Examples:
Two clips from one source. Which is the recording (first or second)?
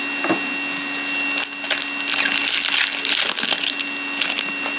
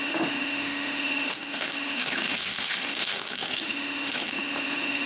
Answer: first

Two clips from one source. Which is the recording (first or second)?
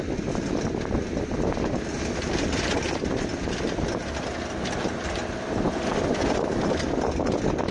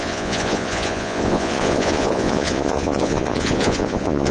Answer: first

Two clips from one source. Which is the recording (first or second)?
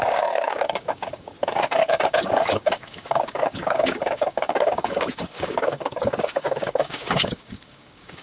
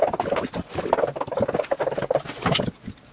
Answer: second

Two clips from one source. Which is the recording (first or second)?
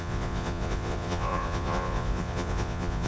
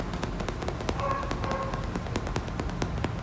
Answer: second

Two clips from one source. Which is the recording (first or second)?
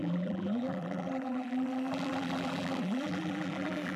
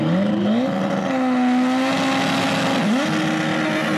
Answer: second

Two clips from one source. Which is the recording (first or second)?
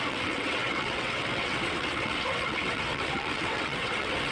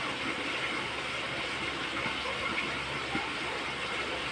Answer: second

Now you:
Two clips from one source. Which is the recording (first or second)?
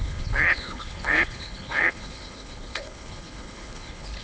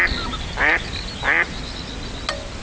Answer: second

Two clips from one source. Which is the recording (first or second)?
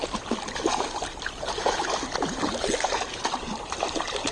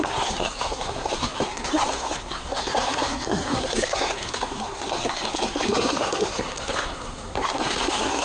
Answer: first